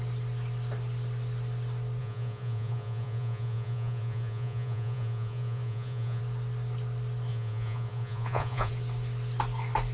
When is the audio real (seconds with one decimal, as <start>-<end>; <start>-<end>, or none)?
0.0-2.0; 6.2-7.3; 8.7-9.9